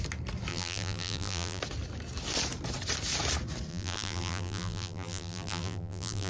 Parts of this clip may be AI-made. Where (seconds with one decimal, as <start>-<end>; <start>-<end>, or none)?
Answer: 0.5-1.6; 3.7-6.3